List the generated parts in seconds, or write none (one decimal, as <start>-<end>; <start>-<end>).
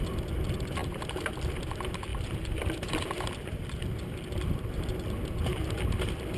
0.8-1.6; 2.1-3.8